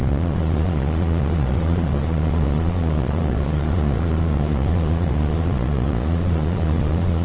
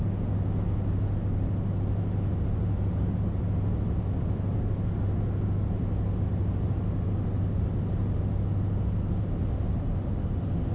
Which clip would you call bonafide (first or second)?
second